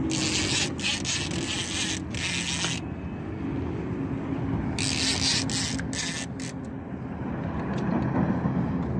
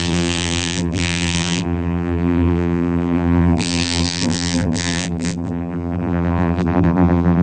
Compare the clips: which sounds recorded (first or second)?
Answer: first